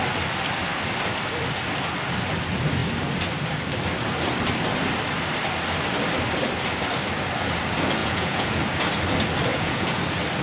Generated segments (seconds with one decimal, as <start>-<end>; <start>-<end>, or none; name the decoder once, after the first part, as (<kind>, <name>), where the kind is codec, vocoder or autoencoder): 8.0-8.6 (vocoder, Vocos); 9.5-10.0